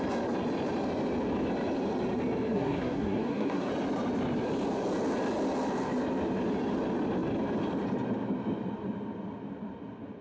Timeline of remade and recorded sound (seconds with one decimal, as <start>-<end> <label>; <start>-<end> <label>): 0.0-2.5 recorded; 2.5-3.7 remade; 3.7-10.2 recorded